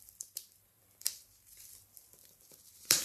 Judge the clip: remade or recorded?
remade